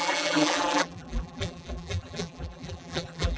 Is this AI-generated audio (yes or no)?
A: yes